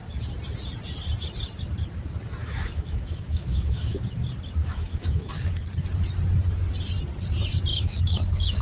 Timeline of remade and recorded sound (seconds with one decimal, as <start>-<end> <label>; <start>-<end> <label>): 0.0-2.4 recorded; 2.4-4.0 remade; 4.0-4.6 recorded; 4.6-5.3 remade; 5.3-7.7 recorded; 7.7-8.6 remade

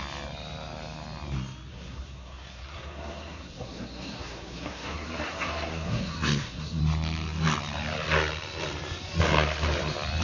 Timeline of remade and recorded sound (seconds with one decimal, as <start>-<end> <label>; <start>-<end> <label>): 0.0-1.7 recorded; 1.7-6.8 remade; 6.8-10.2 recorded

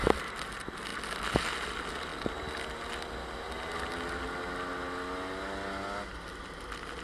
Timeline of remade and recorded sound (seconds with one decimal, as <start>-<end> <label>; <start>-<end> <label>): 0.0-7.0 recorded